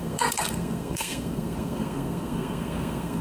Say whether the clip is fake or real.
fake